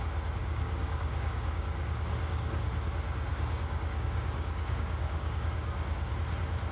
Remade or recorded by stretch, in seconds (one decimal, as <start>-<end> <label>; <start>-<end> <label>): 0.0-0.4 recorded; 0.4-2.7 remade; 2.7-3.3 recorded; 3.3-6.1 remade; 6.1-6.7 recorded